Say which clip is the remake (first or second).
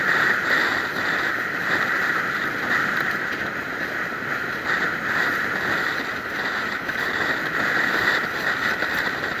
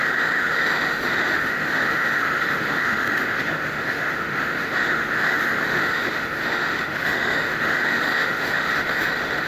second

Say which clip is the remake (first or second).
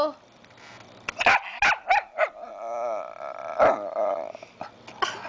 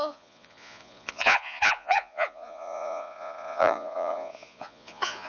second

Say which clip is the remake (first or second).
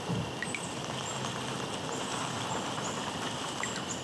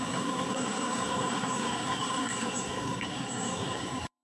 second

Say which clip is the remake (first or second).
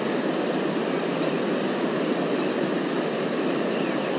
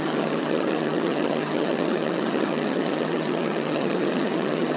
second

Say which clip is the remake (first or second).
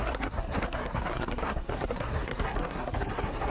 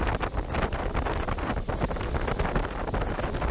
first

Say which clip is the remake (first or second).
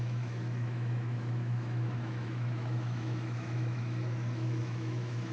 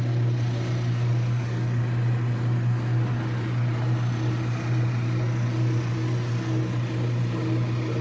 first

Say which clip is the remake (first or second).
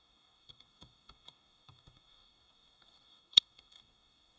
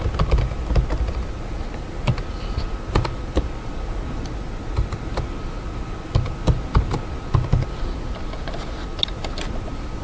first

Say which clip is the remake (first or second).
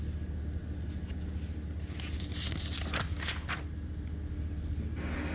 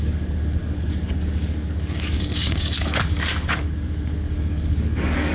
second